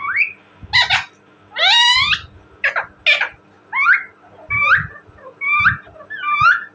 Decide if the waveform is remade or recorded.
recorded